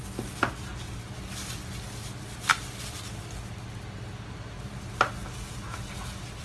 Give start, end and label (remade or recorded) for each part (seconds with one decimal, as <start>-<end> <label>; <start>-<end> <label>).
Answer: 0.0-0.7 recorded; 0.7-1.3 remade; 1.3-2.5 recorded; 2.5-3.1 remade; 3.1-6.4 recorded